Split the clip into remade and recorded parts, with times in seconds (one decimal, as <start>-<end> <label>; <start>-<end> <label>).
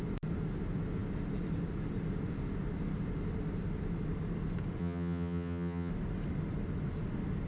0.0-4.8 recorded; 4.8-5.9 remade; 5.9-7.5 recorded